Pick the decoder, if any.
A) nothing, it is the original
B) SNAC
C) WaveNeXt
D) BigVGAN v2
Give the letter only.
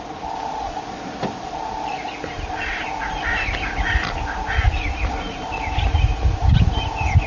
A